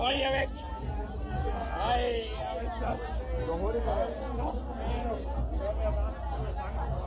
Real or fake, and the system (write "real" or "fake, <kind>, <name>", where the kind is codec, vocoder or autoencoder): real